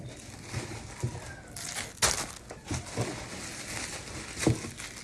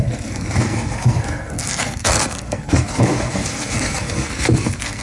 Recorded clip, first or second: first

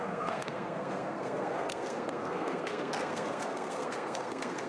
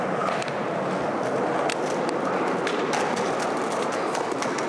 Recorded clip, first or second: second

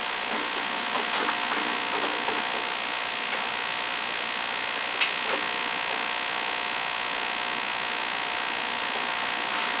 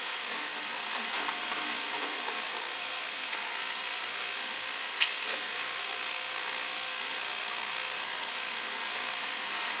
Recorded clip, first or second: first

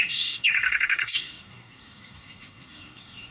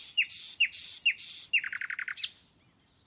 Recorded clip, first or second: second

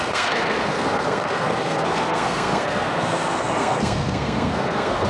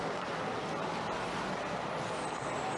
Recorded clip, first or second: second